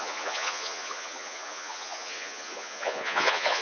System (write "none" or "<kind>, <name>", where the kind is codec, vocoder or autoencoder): vocoder, Vocos